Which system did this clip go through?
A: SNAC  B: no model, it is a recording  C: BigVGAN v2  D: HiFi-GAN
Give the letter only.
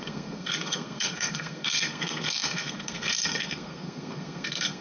A